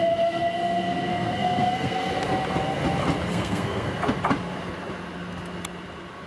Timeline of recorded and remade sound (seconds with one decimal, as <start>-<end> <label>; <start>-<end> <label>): 0.0-1.1 recorded; 1.1-2.1 remade; 2.1-3.3 recorded; 3.3-3.9 remade; 3.9-6.3 recorded